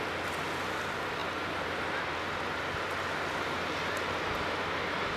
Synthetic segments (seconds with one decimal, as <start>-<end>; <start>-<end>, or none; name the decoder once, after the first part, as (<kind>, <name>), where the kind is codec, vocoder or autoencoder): none